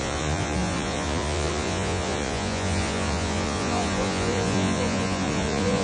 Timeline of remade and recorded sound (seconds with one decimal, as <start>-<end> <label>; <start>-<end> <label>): 0.0-5.8 remade